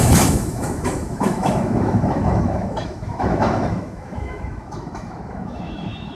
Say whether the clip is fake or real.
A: fake